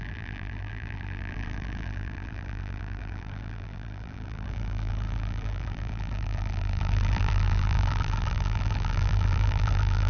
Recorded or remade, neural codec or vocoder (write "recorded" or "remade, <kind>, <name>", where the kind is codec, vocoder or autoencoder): remade, vocoder, BigVGAN v2